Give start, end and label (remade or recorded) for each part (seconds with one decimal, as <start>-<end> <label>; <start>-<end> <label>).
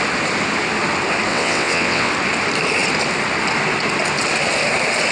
0.0-1.3 recorded; 1.3-2.1 remade; 2.1-5.1 recorded